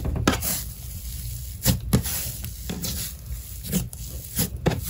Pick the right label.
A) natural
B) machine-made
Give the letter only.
A